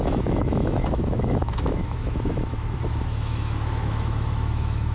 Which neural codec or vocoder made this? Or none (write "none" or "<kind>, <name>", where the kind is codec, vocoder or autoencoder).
autoencoder, DAC-VAE